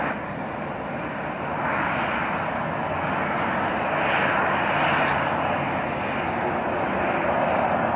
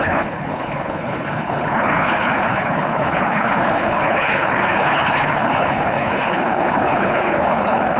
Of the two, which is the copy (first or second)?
second